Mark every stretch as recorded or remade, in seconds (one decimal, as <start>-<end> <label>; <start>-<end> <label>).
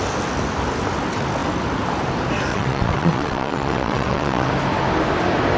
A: 0.0-2.5 recorded; 2.5-4.5 remade; 4.5-5.6 recorded